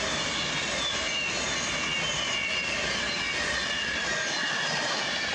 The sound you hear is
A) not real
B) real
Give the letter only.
B